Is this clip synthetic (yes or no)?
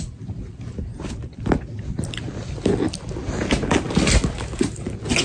no